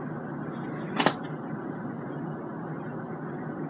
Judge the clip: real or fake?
real